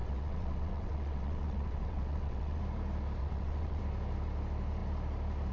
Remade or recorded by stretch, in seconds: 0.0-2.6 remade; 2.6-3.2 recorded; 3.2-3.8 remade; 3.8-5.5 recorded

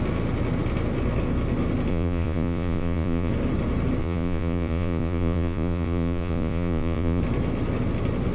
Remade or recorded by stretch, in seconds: 0.0-1.9 recorded; 1.9-3.3 remade; 3.3-4.0 recorded; 4.0-7.2 remade; 7.2-8.3 recorded

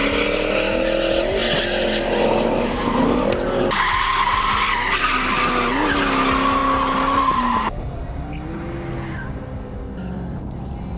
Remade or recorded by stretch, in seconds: 0.0-11.0 recorded

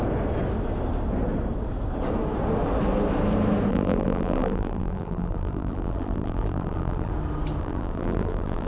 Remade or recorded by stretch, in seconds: 0.0-3.7 recorded; 3.7-7.1 remade; 7.1-7.6 recorded; 7.6-8.7 remade

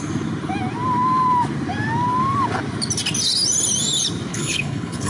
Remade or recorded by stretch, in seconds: 0.0-4.3 recorded; 4.3-5.1 remade